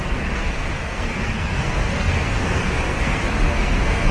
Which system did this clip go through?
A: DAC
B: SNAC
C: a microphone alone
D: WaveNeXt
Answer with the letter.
B